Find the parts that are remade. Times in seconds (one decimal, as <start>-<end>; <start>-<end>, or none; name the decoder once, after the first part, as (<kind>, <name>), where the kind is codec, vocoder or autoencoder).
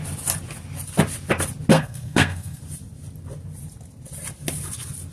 1.7-2.6 (codec, SNAC)